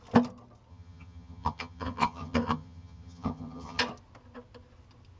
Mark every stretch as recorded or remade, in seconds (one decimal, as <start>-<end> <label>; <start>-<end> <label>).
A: 0.0-0.7 recorded; 0.7-3.8 remade; 3.8-5.2 recorded